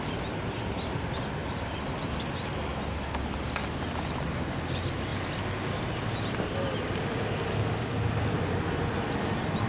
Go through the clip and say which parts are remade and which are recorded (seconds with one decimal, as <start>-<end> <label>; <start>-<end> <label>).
0.0-9.7 recorded